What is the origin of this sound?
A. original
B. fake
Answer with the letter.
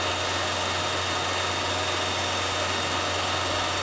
A